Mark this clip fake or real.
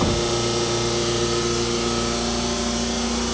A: real